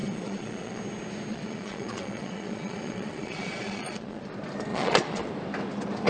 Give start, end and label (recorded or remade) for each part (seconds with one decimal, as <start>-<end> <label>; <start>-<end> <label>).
0.0-0.8 remade; 0.8-1.3 recorded; 1.3-4.2 remade; 4.2-4.7 recorded; 4.7-5.2 remade; 5.2-6.1 recorded